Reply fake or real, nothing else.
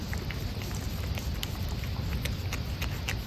real